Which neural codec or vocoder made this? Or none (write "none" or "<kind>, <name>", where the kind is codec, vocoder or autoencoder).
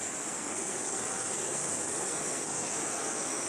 codec, SNAC